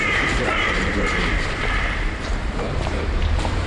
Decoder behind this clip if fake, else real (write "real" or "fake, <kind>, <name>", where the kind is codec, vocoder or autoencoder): fake, vocoder, BigVGAN v2